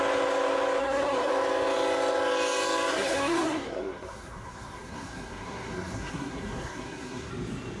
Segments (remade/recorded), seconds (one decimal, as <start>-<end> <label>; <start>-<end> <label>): 0.0-0.8 recorded; 0.8-1.3 remade; 1.3-2.9 recorded; 2.9-7.3 remade; 7.3-7.8 recorded